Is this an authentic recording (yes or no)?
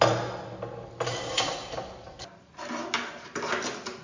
yes